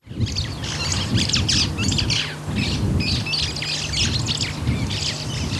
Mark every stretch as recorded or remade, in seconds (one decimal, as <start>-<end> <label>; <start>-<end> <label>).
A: 0.0-5.6 recorded